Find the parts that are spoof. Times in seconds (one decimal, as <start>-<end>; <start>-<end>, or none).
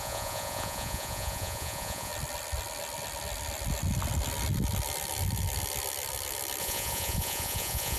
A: 0.0-2.1; 6.6-8.0